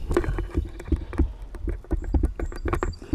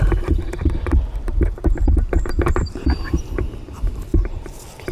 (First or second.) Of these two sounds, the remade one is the second